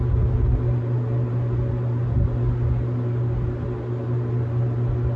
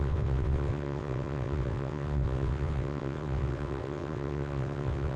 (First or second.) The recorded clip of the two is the first